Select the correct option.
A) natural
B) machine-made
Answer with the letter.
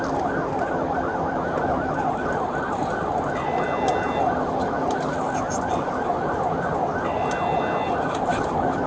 A